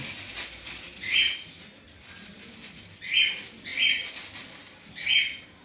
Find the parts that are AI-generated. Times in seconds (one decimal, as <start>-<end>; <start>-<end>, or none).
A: none